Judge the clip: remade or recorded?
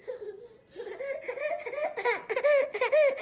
recorded